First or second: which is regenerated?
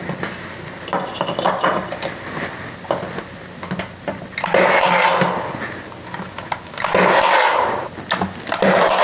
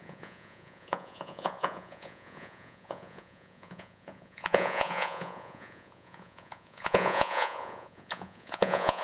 second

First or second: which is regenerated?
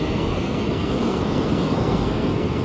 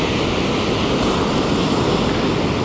first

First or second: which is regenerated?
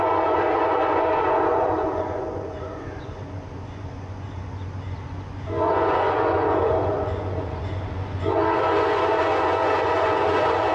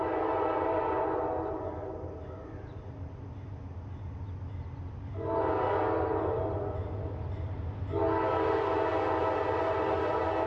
first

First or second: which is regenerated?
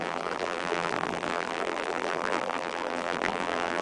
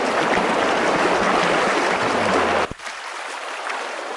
first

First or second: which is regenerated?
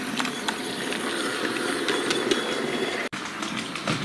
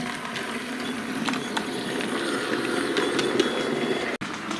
first